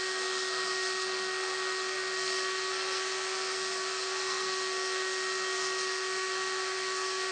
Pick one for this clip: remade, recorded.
remade